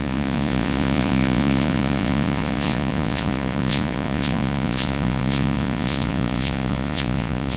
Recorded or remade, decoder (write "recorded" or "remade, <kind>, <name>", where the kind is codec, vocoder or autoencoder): remade, vocoder, Vocos